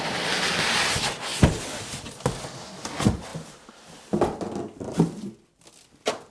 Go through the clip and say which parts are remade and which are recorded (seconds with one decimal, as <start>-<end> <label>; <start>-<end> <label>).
0.0-6.3 recorded